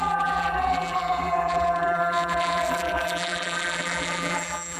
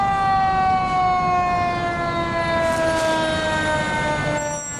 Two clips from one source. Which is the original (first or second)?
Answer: second